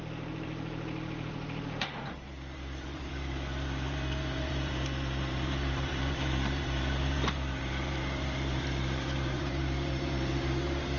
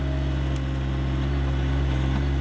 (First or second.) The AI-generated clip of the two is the first